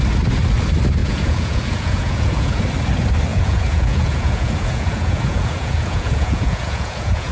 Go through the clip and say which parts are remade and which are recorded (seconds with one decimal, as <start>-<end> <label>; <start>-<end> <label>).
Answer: 0.0-1.0 recorded; 1.0-2.6 remade; 2.6-3.3 recorded; 3.3-7.3 remade